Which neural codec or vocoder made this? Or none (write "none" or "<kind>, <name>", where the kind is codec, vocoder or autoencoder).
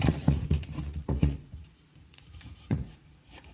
vocoder, Vocos